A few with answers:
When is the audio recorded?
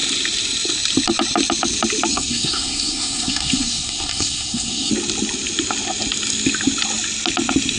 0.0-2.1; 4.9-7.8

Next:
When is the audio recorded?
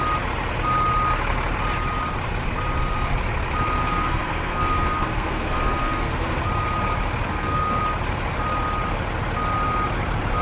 0.0-3.8; 6.4-7.3; 7.8-10.4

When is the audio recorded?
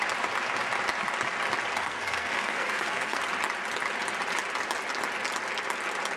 0.0-1.8; 3.2-6.2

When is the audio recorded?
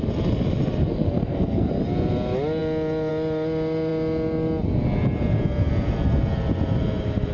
0.0-0.9; 1.7-7.3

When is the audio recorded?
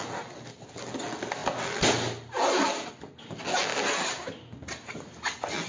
0.0-5.7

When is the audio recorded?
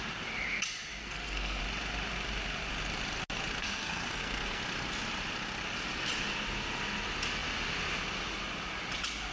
0.0-1.0; 1.6-3.6; 4.6-9.3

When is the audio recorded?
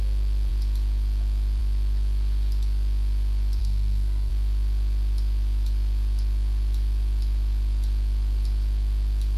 0.0-3.6; 4.3-9.4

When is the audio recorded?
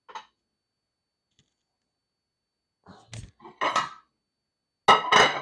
0.0-5.4